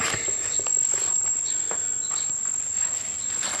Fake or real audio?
real